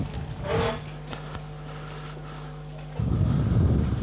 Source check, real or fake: real